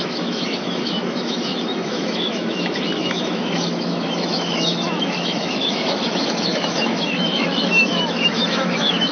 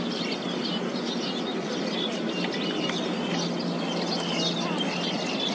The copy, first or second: first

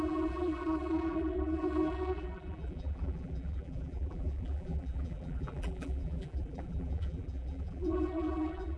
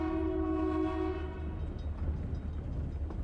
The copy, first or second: first